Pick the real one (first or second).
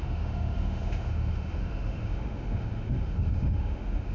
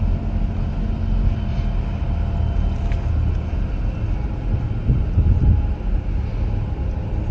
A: second